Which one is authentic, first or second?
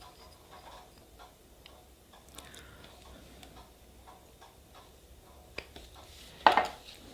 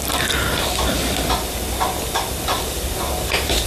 first